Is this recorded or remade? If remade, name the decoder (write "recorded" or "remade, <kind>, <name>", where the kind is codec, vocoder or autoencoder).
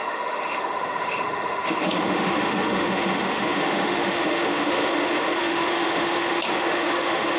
remade, autoencoder, DAC-VAE